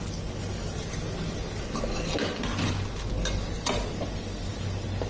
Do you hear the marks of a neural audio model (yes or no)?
no